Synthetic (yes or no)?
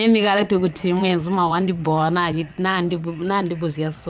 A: yes